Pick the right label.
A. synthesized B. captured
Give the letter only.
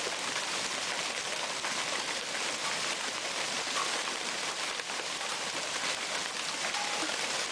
B